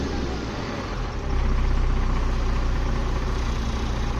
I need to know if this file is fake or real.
real